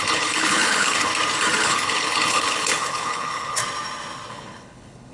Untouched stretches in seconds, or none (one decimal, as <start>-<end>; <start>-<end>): 1.1-1.6; 3.6-4.3